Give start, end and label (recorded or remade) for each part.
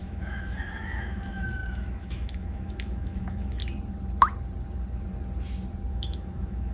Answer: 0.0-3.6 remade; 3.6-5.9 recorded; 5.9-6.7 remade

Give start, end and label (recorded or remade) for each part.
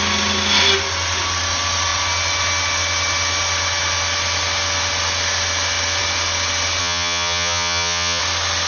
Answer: 0.0-6.8 recorded; 6.8-8.2 remade; 8.2-8.7 recorded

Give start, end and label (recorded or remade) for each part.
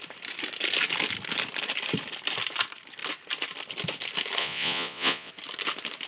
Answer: 0.0-4.4 recorded; 4.4-5.3 remade; 5.3-6.1 recorded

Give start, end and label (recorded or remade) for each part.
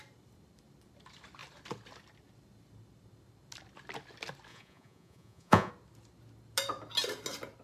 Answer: 0.0-4.5 recorded; 4.5-5.7 remade; 5.7-7.6 recorded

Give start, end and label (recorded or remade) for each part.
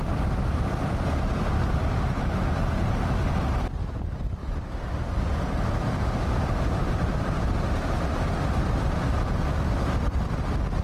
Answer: 0.0-4.4 recorded; 4.4-6.9 remade; 6.9-10.8 recorded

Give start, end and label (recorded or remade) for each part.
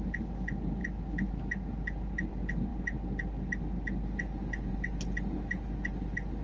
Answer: 0.0-6.4 recorded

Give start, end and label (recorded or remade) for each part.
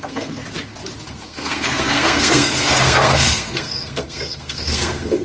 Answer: 0.0-0.4 remade; 0.4-1.1 recorded; 1.1-5.2 remade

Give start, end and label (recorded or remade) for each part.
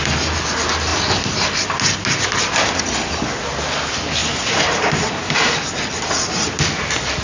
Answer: 0.0-4.2 recorded; 4.2-6.5 remade; 6.5-7.2 recorded